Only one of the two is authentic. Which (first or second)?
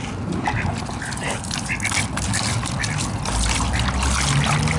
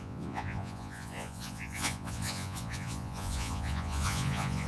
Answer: first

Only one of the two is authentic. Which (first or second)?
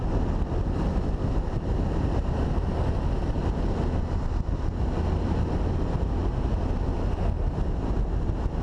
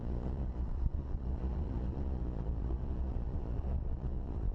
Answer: first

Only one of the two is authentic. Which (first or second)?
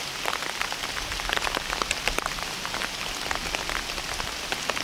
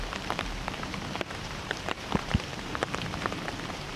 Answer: first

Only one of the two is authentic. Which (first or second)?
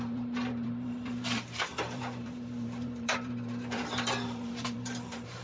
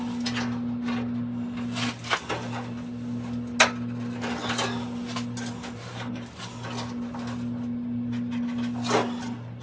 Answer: second